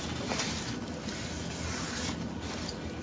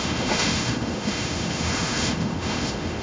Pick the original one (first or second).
first